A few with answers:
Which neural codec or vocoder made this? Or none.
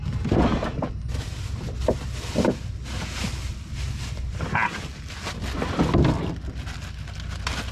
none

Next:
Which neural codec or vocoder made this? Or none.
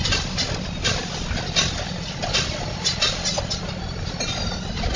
none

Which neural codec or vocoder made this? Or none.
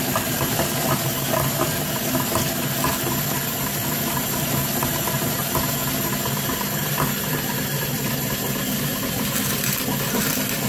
none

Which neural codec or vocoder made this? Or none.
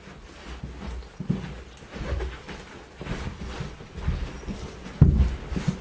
none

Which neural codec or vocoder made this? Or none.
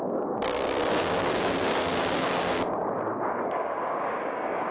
codec, DAC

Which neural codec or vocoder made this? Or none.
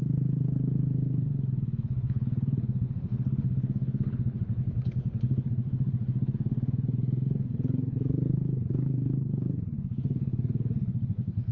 codec, HILCodec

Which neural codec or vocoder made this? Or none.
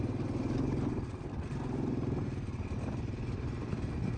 none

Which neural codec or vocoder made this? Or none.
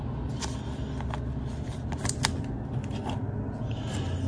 none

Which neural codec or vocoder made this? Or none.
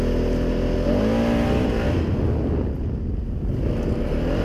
none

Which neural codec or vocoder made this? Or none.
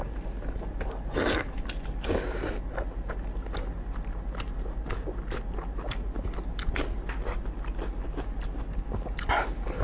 none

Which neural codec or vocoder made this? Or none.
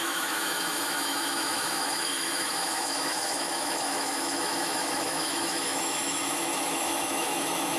autoencoder, DAC-VAE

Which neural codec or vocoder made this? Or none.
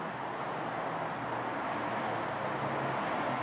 none